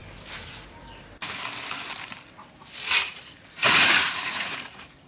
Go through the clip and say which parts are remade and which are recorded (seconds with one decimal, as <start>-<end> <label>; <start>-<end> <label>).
0.0-3.1 recorded; 3.1-5.1 remade